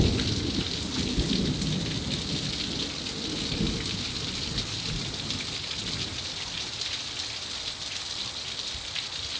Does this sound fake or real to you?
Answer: real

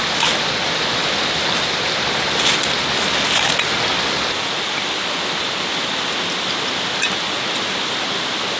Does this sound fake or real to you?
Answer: real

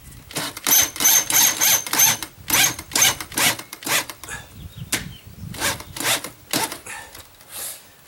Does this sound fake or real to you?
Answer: real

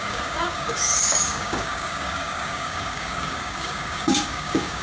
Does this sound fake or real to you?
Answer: fake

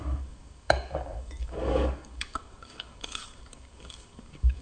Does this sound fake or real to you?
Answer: fake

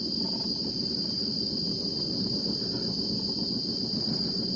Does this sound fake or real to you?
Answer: real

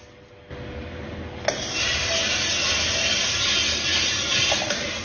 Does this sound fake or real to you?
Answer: real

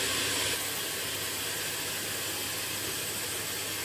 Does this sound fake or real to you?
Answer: real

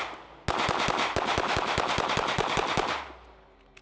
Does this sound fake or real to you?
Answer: real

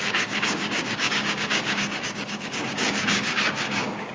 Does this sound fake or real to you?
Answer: fake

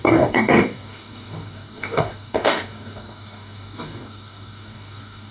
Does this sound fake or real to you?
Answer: fake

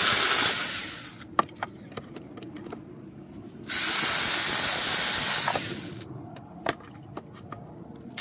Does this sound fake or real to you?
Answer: real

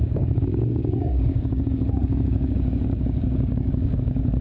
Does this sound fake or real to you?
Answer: fake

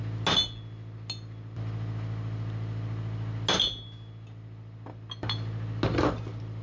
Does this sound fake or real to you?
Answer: real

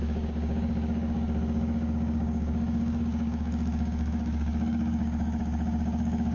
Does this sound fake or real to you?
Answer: fake